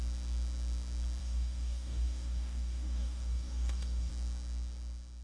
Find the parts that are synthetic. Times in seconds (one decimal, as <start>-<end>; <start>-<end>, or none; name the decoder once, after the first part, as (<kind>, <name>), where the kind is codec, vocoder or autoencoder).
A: 1.2-4.1 (codec, DAC)

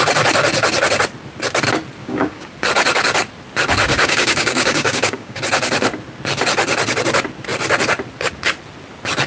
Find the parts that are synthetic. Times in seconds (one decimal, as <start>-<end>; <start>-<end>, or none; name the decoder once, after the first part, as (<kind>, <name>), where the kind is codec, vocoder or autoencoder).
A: 2.0-2.5 (codec, DAC); 3.9-5.4

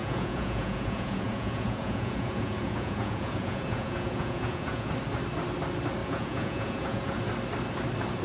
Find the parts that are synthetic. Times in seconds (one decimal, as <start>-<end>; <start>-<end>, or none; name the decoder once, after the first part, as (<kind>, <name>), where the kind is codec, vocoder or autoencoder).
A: 0.0-4.9 (vocoder, Vocos); 6.0-7.2

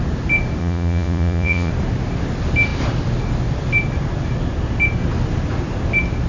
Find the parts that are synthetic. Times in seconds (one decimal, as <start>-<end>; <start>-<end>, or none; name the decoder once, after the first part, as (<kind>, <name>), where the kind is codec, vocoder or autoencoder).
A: 0.6-1.7 (vocoder, Vocos)

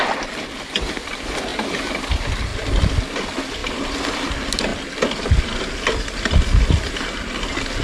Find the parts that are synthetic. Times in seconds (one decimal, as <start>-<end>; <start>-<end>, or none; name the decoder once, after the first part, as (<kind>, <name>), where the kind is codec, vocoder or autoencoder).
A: none

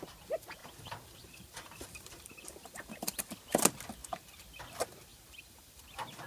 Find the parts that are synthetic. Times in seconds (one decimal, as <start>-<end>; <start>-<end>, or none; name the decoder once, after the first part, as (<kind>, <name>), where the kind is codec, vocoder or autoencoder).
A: 0.6-3.3 (vocoder, BigVGAN v2); 5.1-5.8

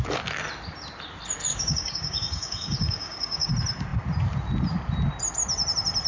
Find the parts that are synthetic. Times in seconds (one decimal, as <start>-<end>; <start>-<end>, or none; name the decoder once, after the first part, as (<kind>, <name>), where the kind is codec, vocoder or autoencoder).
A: 1.5-3.5 (codec, DAC)